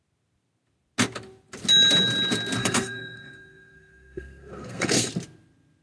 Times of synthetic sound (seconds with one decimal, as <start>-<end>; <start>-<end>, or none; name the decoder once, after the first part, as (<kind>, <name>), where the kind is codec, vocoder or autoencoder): 2.6-5.1 (codec, SNAC)